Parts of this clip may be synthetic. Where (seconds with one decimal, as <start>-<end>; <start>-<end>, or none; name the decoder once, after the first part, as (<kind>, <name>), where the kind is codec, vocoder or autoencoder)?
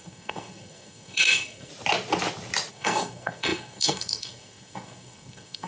0.0-1.7 (codec, SNAC); 2.7-5.7